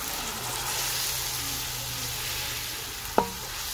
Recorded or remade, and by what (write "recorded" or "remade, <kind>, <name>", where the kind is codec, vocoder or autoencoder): recorded